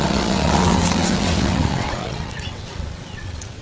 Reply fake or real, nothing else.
fake